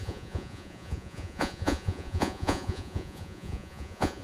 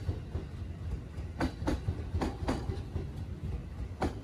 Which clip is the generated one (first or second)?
first